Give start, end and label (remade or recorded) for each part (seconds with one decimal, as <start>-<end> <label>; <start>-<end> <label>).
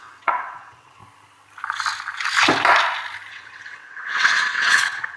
0.0-1.0 remade; 1.0-3.3 recorded; 3.3-5.2 remade